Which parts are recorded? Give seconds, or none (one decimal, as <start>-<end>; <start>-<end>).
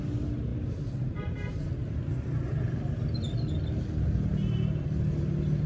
0.0-5.7